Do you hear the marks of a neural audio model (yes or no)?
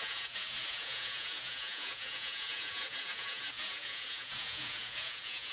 yes